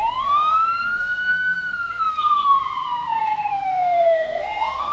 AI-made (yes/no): yes